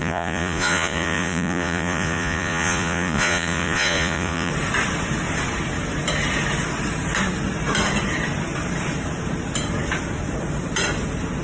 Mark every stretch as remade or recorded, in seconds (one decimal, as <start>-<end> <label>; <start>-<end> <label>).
0.0-4.5 remade; 4.5-11.4 recorded

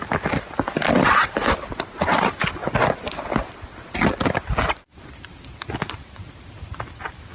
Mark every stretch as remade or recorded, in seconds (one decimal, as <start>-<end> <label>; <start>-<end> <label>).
0.0-7.3 recorded

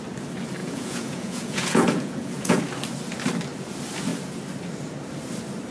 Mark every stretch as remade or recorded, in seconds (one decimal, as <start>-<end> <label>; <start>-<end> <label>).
0.0-0.6 recorded; 0.6-2.6 remade; 2.6-5.7 recorded

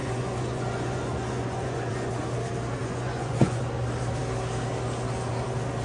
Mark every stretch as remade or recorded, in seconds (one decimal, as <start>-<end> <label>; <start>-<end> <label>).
0.0-2.1 remade; 2.1-2.8 recorded; 2.8-3.6 remade; 3.6-5.8 recorded